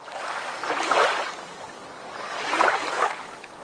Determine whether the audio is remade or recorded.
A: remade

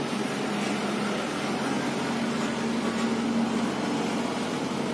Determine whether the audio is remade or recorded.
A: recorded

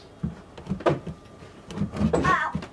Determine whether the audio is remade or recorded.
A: recorded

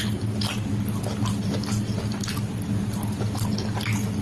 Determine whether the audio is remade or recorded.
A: recorded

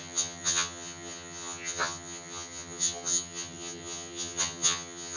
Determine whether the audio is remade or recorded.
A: remade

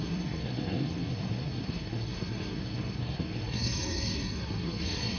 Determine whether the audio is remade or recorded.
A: remade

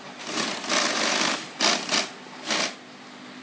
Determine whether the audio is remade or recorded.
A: recorded